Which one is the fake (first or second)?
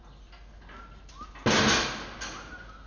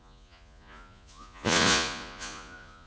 second